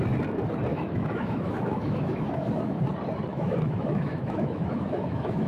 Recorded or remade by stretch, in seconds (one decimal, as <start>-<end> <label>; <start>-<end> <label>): 0.0-0.7 recorded; 0.7-2.8 remade; 2.8-3.3 recorded; 3.3-5.5 remade